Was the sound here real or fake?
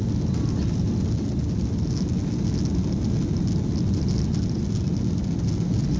real